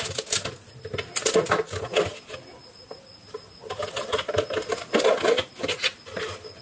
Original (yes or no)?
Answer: yes